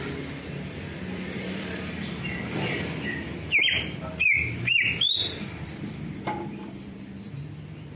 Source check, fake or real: fake